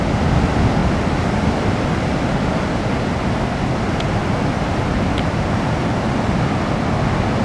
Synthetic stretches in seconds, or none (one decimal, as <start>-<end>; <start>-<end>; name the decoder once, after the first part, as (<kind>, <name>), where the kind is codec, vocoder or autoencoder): none

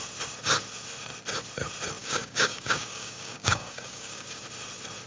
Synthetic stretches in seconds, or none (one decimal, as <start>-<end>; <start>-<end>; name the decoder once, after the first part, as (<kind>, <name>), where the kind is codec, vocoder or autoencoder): 2.0-4.4 (codec, DAC)

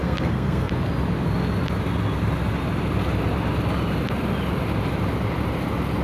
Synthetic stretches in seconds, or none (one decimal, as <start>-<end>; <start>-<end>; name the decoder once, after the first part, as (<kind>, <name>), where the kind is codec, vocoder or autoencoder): 0.0-0.7 (codec, SNAC)

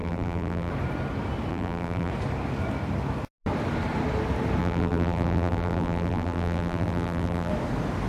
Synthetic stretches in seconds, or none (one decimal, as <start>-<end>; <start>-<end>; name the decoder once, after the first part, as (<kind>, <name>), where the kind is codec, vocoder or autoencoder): 0.0-0.7 (vocoder, BigVGAN v2); 1.5-2.1; 4.6-7.5

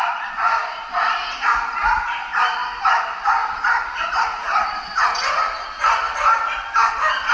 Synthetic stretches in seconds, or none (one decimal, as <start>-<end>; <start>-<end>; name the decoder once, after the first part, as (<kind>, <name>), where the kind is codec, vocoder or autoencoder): 3.4-4.4 (vocoder, BigVGAN v2)

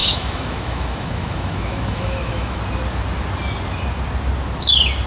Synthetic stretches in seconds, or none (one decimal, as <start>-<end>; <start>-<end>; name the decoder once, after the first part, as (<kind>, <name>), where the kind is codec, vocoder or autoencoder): 0.0-2.6 (autoencoder, DAC-VAE)

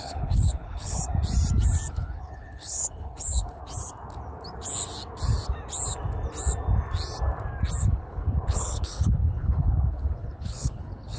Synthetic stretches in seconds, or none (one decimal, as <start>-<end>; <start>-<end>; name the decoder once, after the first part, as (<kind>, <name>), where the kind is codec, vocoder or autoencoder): 0.0-1.0 (codec, HILCodec); 1.9-3.6; 7.8-11.2

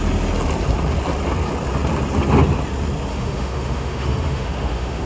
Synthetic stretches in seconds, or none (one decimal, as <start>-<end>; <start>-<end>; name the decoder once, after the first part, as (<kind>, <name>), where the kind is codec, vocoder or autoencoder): 3.1-5.1 (autoencoder, DAC-VAE)